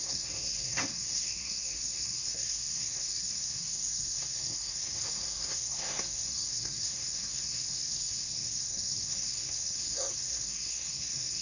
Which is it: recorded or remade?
remade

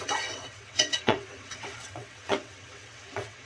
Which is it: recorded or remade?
remade